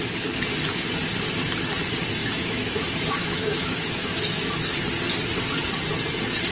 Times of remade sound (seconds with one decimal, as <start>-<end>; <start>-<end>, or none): 2.2-4.7